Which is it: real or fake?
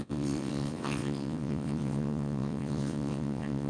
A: fake